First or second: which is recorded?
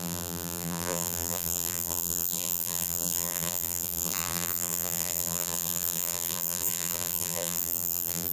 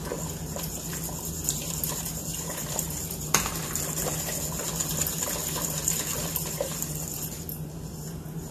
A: second